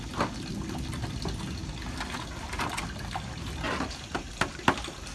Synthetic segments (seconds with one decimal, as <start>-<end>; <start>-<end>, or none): none